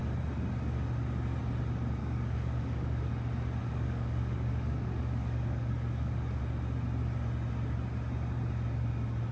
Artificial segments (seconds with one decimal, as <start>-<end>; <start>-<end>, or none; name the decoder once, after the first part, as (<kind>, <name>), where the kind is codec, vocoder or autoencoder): 2.0-3.1 (codec, DAC); 3.6-6.4